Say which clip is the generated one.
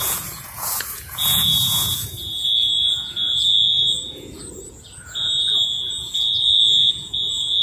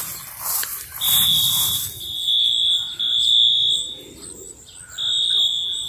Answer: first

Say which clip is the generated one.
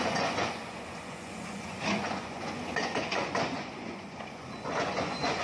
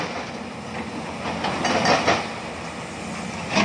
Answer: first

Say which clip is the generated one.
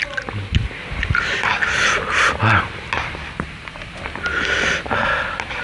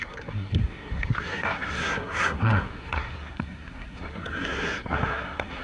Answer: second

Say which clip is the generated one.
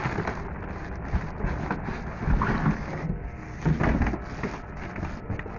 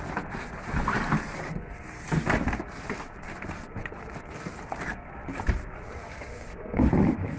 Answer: second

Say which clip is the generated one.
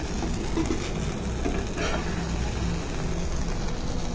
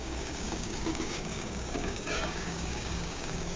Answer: second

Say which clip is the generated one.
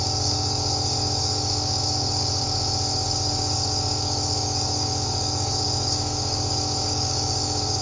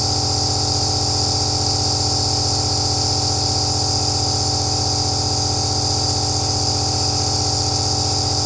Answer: first